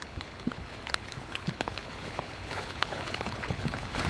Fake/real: fake